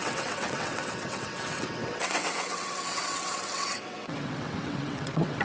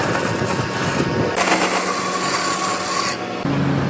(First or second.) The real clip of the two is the second